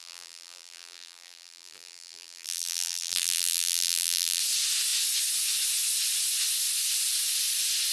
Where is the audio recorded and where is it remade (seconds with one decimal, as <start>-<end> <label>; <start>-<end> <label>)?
0.0-4.4 remade; 4.4-7.9 recorded